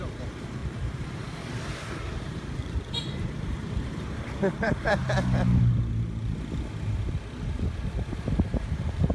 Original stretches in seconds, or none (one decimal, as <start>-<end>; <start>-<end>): 5.0-8.1